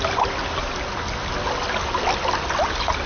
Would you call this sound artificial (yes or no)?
no